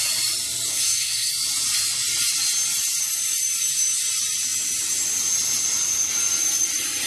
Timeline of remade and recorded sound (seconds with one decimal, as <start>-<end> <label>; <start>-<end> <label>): 0.0-0.7 recorded; 0.7-1.3 remade; 1.3-7.1 recorded